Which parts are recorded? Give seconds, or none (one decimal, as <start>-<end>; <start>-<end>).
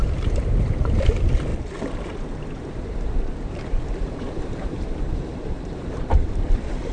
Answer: 1.5-2.6